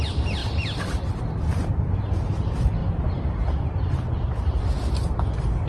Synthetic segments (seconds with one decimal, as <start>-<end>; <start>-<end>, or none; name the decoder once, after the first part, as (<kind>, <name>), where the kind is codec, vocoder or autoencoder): 0.4-1.2 (vocoder, BigVGAN v2); 1.6-2.1; 2.8-5.2